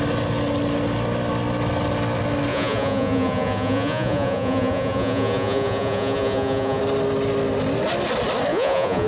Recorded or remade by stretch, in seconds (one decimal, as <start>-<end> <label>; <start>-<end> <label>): 0.0-2.5 recorded; 2.5-6.8 remade; 6.8-8.5 recorded; 8.5-9.1 remade